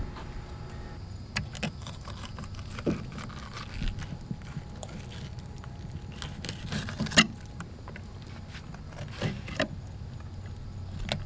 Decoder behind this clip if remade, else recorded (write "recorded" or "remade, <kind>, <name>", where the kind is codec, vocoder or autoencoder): recorded